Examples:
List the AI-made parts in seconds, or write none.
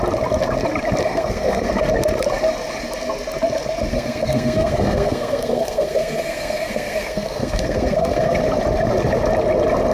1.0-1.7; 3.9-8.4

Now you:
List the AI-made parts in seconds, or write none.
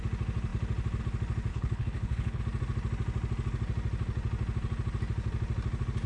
1.5-2.4